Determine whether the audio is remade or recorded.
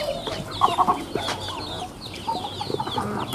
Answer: recorded